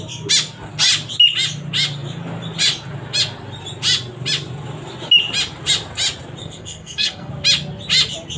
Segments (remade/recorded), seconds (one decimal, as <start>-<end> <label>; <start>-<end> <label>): 0.0-6.4 recorded; 6.4-7.3 remade; 7.3-8.4 recorded